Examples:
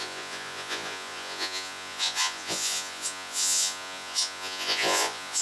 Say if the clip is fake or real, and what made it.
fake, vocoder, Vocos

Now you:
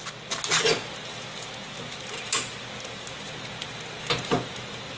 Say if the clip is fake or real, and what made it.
real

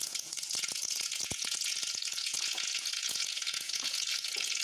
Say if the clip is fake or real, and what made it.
fake, vocoder, Vocos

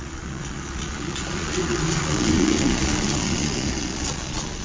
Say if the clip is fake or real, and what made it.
fake, vocoder, Vocos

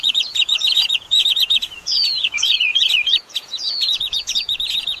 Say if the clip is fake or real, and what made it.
fake, vocoder, Vocos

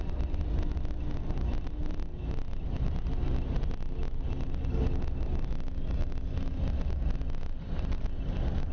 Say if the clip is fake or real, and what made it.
real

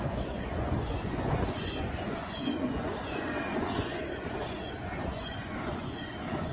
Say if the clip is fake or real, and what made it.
fake, vocoder, Vocos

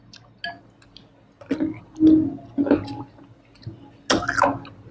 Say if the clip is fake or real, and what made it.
real